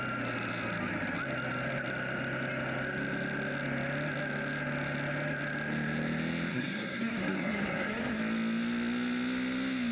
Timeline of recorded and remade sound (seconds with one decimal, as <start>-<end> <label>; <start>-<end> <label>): 0.0-6.5 recorded; 6.5-8.2 remade; 8.2-9.9 recorded